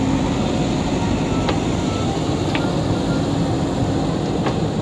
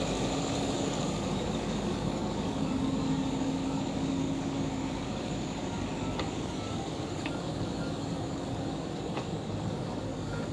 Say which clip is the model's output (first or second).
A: second